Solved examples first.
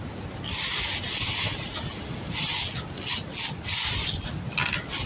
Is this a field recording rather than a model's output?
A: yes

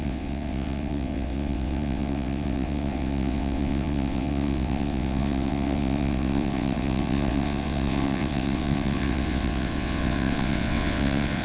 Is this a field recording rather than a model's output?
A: no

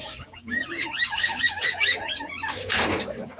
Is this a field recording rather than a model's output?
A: no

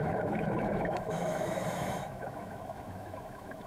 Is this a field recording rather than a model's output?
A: no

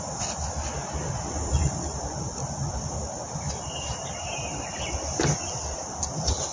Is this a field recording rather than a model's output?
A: yes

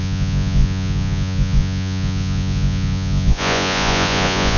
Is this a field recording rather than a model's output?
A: no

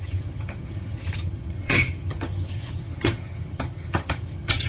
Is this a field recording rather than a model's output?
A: no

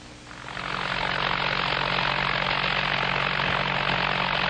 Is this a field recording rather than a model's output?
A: yes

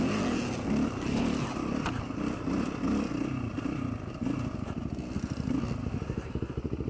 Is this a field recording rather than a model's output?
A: yes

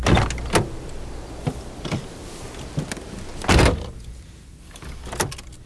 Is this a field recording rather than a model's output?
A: yes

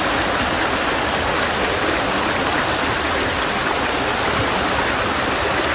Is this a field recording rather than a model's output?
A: yes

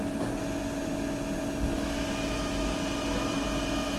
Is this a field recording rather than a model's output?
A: yes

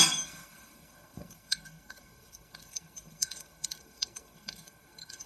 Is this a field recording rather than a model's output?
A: no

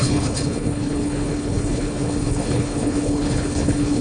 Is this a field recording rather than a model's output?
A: no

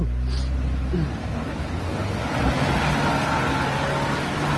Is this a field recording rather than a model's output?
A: yes